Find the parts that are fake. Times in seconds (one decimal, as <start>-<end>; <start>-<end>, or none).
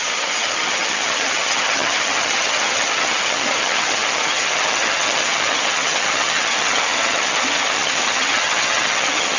0.0-9.4